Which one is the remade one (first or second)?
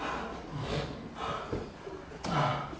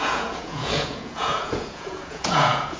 second